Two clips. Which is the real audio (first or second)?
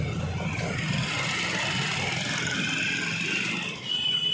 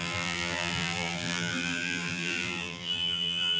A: first